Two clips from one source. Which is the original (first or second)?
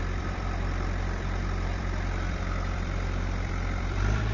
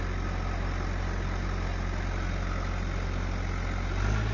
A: second